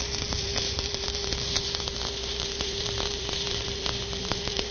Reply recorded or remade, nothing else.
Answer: remade